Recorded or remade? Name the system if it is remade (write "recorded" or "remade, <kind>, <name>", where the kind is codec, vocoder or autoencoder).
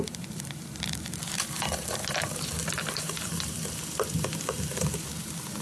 remade, vocoder, BigVGAN v2